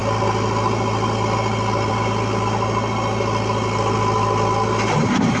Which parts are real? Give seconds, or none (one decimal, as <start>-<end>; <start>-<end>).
0.0-5.4